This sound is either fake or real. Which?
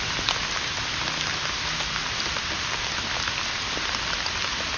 real